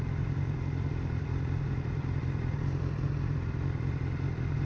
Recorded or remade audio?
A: recorded